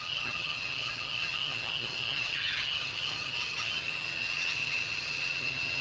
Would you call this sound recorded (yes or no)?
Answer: no